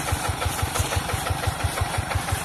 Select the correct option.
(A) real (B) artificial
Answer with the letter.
B